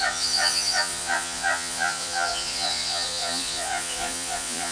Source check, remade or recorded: remade